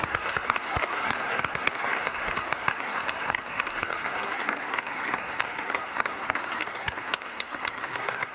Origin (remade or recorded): remade